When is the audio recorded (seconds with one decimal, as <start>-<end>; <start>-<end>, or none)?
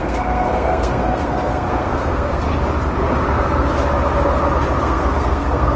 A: 2.5-3.3; 3.7-4.8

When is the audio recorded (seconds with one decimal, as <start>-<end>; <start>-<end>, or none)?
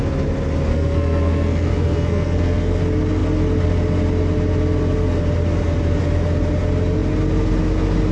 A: 0.0-0.7; 2.8-8.1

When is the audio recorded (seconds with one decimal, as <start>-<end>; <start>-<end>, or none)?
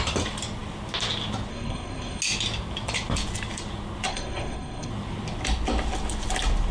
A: 0.0-1.5; 2.2-4.1; 4.9-6.7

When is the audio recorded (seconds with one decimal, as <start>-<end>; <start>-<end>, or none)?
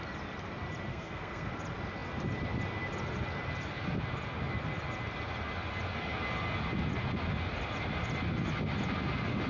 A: 0.0-0.9; 1.5-9.5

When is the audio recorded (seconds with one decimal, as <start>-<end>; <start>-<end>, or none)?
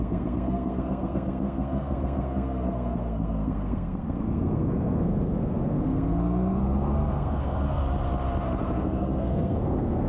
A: 7.8-8.6